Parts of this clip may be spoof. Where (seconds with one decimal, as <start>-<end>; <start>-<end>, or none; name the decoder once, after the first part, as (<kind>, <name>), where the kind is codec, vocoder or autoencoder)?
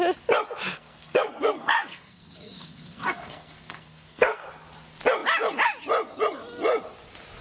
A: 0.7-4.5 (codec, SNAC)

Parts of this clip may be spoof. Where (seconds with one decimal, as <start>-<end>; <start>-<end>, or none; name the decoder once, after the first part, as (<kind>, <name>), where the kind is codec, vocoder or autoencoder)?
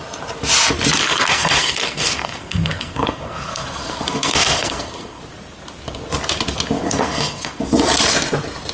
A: 1.0-5.2 (codec, SNAC); 6.8-7.6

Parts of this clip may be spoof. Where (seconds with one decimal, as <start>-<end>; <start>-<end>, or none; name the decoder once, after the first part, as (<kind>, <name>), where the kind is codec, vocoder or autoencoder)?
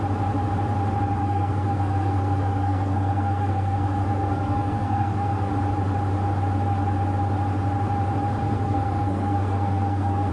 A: 1.2-5.5 (codec, SNAC); 8.4-10.3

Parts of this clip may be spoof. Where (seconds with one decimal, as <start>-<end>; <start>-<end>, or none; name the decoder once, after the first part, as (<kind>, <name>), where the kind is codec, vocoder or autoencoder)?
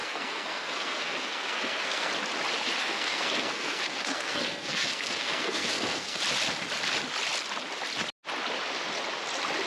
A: 0.0-2.1 (codec, SNAC); 2.8-6.2